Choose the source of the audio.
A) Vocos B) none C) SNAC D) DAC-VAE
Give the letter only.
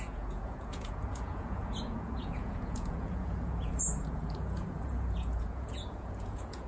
A